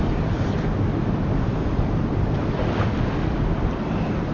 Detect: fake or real real